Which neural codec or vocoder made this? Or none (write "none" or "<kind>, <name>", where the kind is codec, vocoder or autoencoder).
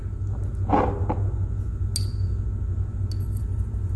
none